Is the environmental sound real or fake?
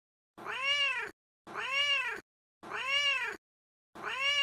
real